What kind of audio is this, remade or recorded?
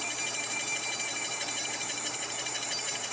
remade